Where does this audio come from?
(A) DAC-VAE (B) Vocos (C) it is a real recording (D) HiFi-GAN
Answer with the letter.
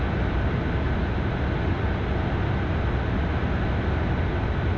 C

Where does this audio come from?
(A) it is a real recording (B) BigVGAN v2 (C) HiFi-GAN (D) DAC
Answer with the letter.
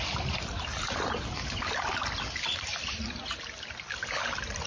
A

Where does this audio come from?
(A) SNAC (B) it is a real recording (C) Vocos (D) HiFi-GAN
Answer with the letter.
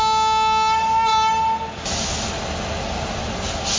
B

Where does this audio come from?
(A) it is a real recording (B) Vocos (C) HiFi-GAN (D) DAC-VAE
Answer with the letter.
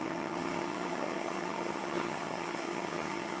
C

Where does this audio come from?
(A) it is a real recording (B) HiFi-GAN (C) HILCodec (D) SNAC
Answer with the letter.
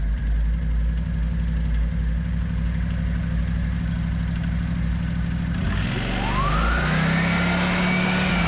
A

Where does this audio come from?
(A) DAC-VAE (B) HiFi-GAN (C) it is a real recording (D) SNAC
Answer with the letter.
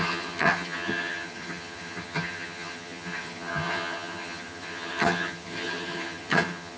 B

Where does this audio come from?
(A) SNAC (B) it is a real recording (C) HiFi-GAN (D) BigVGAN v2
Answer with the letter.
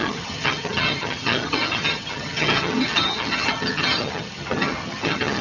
C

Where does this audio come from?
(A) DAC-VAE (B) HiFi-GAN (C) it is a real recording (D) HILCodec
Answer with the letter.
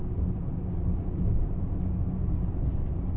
C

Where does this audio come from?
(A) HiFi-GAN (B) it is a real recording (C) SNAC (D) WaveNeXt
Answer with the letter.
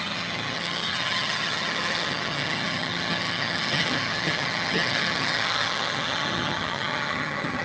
A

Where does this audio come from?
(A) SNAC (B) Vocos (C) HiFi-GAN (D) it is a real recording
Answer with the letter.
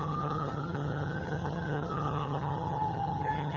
C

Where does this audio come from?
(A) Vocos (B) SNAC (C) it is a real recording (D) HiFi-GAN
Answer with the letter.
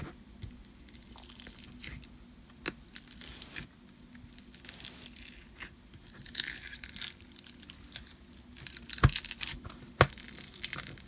C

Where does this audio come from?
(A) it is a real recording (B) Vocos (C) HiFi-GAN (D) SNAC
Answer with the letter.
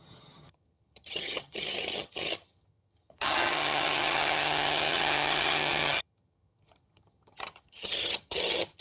C